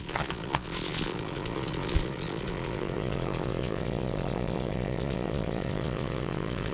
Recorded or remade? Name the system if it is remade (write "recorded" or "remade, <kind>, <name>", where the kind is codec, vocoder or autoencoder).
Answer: remade, vocoder, Vocos